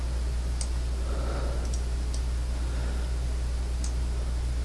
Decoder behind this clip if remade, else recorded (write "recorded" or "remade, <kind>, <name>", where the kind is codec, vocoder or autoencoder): recorded